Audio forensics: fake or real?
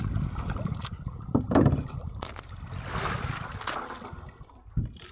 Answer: real